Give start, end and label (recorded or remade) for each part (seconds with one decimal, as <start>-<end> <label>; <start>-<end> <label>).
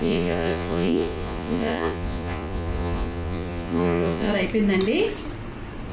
0.0-4.3 remade; 4.3-5.9 recorded